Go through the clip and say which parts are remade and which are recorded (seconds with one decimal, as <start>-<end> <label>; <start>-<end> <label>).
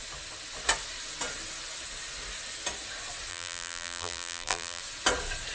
0.0-3.3 recorded; 3.3-4.8 remade; 4.8-5.5 recorded